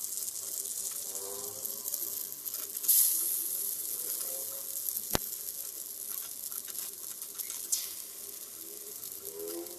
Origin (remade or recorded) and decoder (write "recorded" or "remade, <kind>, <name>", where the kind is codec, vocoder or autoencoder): recorded